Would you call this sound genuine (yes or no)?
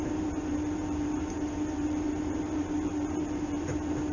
no